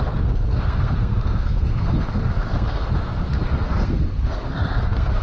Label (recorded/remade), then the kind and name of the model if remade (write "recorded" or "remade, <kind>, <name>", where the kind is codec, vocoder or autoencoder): remade, codec, SNAC